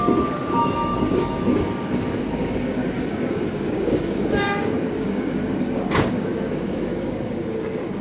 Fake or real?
fake